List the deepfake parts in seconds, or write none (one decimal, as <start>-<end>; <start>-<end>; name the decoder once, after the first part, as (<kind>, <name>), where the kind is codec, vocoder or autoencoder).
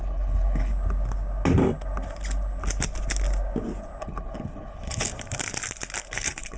0.0-0.7 (codec, HILCodec); 4.0-5.1; 6.1-6.6